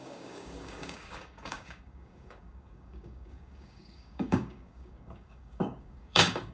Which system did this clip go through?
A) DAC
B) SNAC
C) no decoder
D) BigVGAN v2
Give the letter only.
A